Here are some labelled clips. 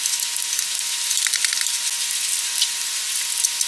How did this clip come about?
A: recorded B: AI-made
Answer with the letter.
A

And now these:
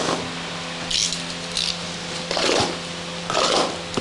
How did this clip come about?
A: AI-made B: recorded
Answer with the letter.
B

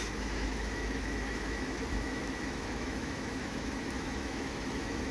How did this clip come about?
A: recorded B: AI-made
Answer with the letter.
B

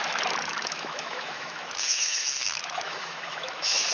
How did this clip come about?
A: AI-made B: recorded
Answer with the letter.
A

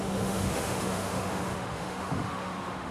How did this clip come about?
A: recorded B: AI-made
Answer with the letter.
B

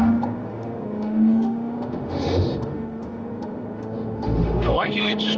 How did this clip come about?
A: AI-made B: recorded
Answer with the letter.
A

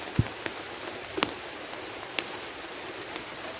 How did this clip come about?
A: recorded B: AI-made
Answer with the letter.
A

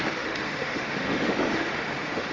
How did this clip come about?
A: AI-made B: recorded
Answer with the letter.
A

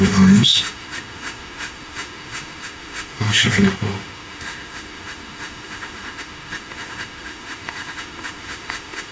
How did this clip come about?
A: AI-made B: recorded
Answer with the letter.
A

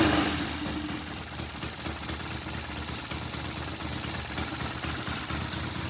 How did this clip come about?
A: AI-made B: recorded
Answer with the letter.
B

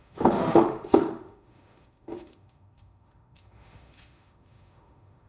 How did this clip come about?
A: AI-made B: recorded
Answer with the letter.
A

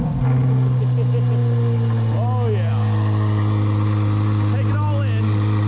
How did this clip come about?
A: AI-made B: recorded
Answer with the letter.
B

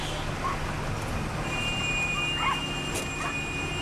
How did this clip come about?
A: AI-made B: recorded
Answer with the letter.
B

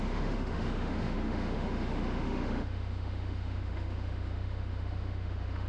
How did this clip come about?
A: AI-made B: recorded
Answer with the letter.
A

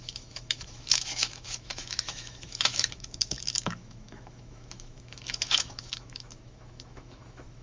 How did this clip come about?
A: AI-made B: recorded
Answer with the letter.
A